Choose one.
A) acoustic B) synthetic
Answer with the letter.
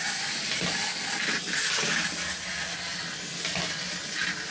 A